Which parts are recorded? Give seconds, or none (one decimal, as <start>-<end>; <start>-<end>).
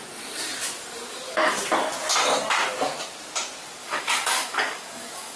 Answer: 0.0-3.8